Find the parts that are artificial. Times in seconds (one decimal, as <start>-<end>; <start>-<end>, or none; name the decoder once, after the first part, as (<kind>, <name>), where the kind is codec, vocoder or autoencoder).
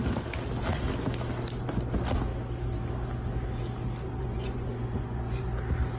4.2-5.4 (vocoder, Vocos)